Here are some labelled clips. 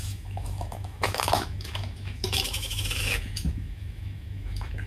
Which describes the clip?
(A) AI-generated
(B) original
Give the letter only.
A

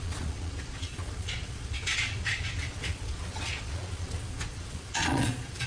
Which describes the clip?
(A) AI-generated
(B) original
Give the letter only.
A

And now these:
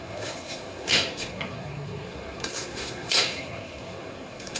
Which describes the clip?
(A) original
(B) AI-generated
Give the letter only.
B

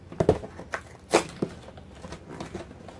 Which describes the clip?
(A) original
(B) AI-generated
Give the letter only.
A